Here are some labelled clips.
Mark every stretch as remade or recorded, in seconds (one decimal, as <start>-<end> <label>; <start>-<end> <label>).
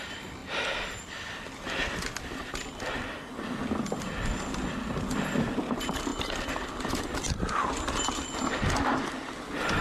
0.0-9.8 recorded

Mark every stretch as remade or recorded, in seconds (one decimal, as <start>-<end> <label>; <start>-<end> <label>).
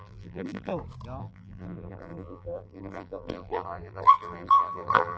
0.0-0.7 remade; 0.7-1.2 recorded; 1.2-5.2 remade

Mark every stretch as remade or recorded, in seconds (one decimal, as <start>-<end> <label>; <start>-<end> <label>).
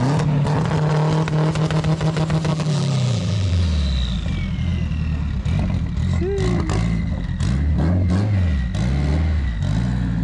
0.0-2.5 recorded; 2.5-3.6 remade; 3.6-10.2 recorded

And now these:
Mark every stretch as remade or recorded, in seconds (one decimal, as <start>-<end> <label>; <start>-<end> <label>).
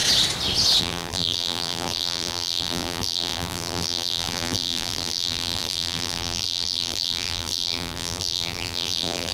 0.0-0.8 recorded; 0.8-9.3 remade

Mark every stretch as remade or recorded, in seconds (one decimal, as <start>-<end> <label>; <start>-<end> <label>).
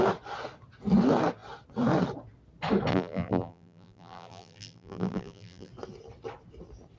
0.0-2.9 recorded; 2.9-5.7 remade; 5.7-7.0 recorded